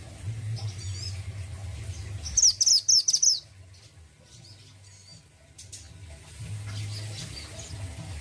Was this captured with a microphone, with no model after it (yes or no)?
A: yes